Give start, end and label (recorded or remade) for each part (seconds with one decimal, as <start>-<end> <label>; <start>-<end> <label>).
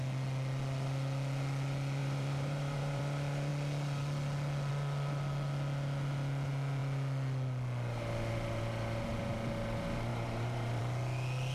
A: 0.0-2.0 recorded; 2.0-3.0 remade; 3.0-10.1 recorded; 10.1-10.8 remade; 10.8-11.5 recorded